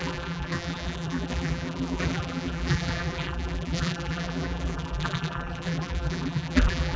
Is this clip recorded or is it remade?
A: remade